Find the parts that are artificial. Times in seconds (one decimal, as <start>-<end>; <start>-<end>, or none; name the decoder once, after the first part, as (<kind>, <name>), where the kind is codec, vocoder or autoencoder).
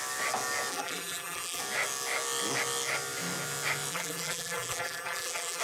0.7-1.6 (vocoder, BigVGAN v2); 3.9-5.6